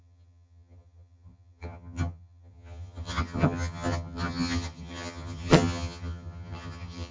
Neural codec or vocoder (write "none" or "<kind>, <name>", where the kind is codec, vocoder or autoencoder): vocoder, HiFi-GAN